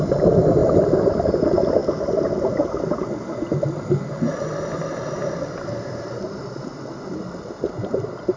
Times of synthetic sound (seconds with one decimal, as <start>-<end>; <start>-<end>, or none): none